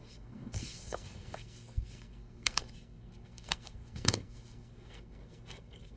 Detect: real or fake fake